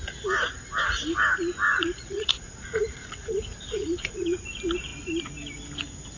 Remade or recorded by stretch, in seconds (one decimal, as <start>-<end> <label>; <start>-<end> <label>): 0.0-1.7 recorded; 1.7-4.4 remade; 4.4-6.2 recorded

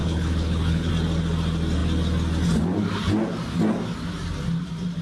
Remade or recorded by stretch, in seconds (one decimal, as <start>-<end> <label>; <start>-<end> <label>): 0.0-0.9 remade; 0.9-5.0 recorded

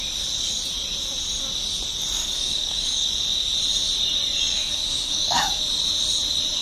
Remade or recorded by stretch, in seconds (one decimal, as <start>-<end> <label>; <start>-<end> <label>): 0.0-2.2 recorded; 2.2-3.1 remade; 3.1-4.5 recorded; 4.5-5.6 remade; 5.6-6.6 recorded